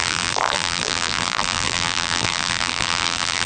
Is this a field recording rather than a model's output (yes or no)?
no